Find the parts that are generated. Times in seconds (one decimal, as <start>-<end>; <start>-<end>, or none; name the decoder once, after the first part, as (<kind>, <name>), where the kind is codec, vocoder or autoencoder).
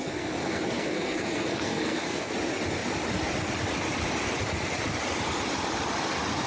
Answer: 0.0-2.3 (codec, SNAC)